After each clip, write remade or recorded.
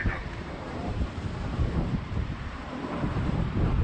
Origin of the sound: remade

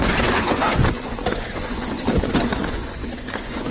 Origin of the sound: remade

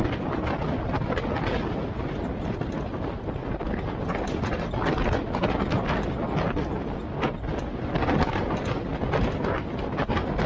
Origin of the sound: recorded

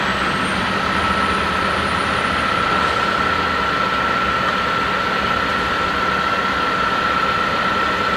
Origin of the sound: recorded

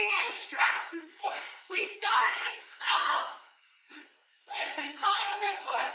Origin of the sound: remade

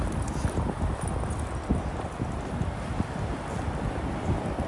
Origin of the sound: recorded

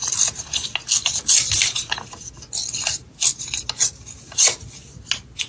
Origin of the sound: recorded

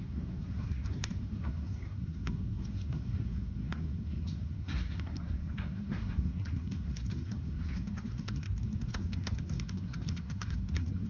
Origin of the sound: remade